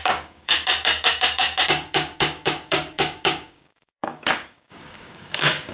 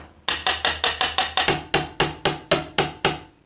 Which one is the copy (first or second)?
first